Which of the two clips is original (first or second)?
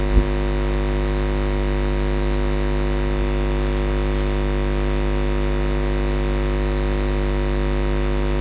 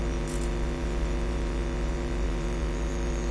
first